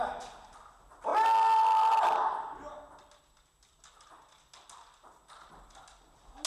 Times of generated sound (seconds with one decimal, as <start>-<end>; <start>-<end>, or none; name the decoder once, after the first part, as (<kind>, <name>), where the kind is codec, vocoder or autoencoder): none